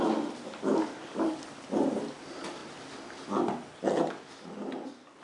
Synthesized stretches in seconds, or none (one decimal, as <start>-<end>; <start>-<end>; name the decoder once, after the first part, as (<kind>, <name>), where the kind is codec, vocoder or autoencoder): 0.7-1.5 (codec, DAC)